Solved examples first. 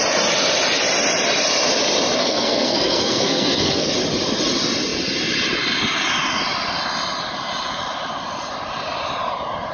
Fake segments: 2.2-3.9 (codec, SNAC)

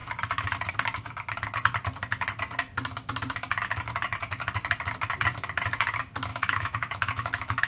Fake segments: 6.3-7.7 (autoencoder, DAC-VAE)